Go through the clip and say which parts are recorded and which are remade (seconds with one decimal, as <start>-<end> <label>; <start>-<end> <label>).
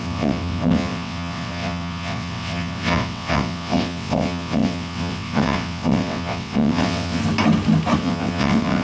0.0-7.2 remade; 7.2-8.0 recorded; 8.0-8.8 remade